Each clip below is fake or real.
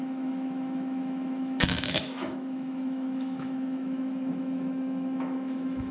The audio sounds fake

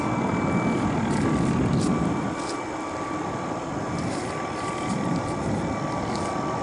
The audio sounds real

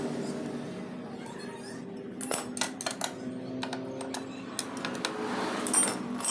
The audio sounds real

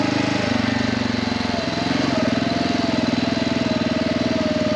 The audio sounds real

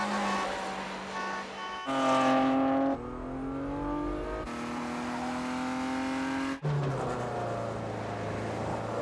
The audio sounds real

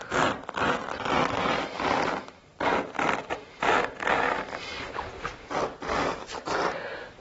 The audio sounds real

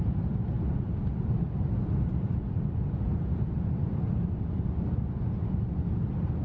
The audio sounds real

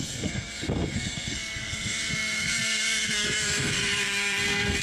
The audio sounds fake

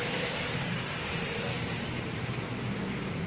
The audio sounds fake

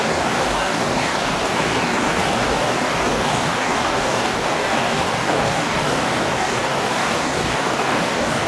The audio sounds fake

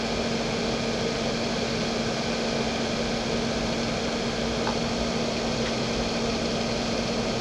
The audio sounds real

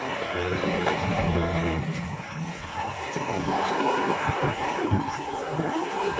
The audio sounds fake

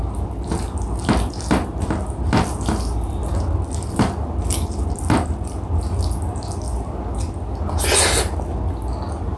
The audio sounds real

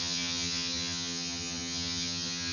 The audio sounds fake